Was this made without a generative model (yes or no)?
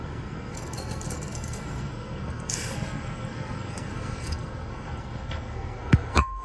no